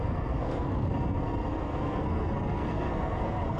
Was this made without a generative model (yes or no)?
no